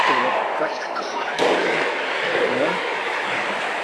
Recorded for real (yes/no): no